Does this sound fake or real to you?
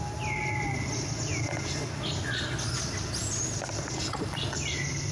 real